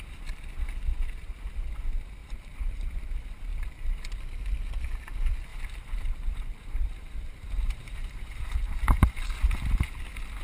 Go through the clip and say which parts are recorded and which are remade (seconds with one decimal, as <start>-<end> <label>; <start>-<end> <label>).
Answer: 0.0-2.2 recorded; 2.2-3.0 remade; 3.0-3.5 recorded; 3.5-4.1 remade; 4.1-5.5 recorded; 5.5-10.0 remade; 10.0-10.4 recorded